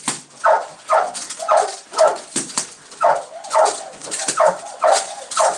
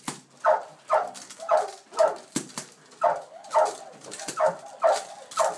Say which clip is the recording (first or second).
second